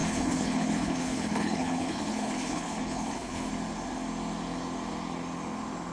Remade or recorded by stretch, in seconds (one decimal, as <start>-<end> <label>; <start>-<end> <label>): 0.0-3.5 remade; 3.5-5.9 recorded